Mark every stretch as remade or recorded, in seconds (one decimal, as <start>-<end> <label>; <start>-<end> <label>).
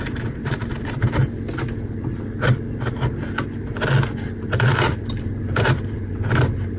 0.0-1.2 remade; 1.2-4.4 recorded; 4.4-6.8 remade